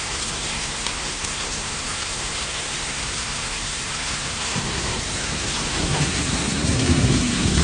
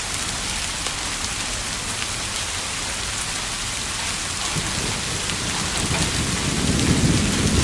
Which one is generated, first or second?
first